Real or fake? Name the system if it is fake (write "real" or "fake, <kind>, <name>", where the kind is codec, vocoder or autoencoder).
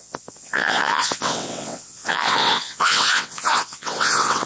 fake, vocoder, WaveNeXt